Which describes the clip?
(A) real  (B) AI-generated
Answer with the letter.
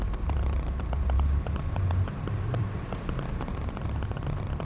B